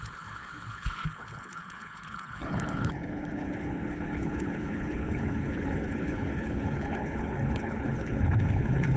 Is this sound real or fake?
fake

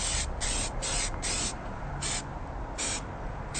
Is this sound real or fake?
real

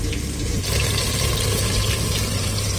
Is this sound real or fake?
fake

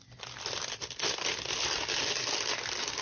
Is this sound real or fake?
real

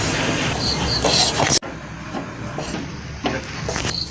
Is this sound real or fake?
real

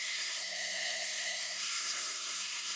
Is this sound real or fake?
fake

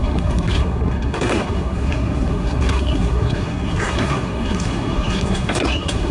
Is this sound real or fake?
fake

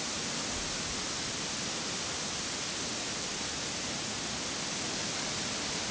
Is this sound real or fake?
real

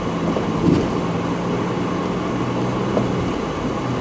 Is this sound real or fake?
real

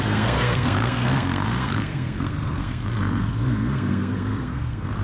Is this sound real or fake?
fake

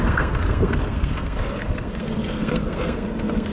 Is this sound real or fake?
fake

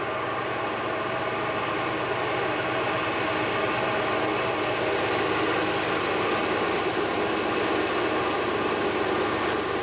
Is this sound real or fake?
real